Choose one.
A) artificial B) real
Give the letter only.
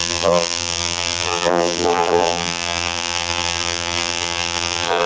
A